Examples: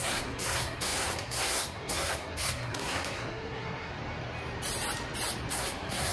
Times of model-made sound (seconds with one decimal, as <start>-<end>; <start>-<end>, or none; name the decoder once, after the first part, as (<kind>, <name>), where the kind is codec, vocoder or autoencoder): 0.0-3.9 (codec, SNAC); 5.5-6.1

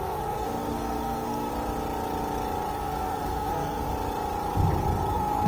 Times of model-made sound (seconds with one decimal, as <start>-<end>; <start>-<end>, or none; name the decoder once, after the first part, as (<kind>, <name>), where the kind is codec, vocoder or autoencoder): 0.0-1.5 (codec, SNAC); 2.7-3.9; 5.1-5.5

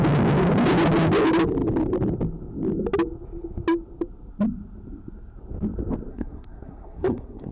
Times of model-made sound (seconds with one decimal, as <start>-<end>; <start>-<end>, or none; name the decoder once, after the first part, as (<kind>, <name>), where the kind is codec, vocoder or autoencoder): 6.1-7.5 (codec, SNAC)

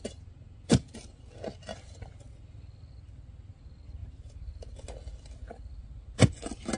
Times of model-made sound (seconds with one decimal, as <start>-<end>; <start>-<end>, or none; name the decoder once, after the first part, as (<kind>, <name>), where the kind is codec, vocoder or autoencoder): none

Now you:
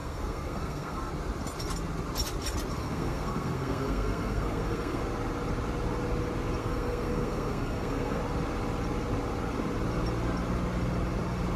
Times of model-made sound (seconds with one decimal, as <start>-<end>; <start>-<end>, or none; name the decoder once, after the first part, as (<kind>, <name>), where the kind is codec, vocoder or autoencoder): 0.0-1.1 (codec, SNAC); 2.8-5.0; 6.6-8.2